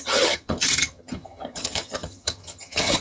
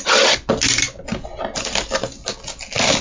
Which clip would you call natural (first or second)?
second